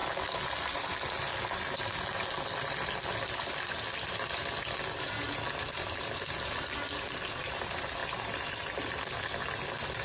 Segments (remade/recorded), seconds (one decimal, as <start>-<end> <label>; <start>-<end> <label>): 0.0-10.0 recorded

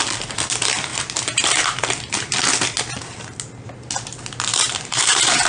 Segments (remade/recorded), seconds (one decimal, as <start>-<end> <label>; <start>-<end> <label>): 0.0-0.9 recorded; 0.9-2.3 remade; 2.3-4.5 recorded; 4.5-5.5 remade

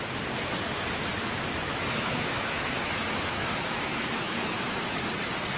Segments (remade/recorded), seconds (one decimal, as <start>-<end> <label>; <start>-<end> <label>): 0.0-1.6 recorded; 1.6-5.0 remade; 5.0-5.6 recorded

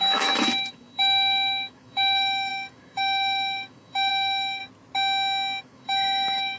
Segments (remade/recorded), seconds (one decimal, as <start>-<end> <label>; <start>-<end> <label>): 0.0-4.6 remade; 4.6-5.6 recorded; 5.6-6.6 remade

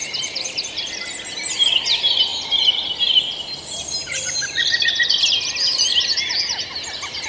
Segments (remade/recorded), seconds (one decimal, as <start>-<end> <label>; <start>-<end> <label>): 0.0-0.6 remade; 0.6-7.3 recorded